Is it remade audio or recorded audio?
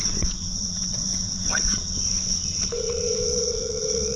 remade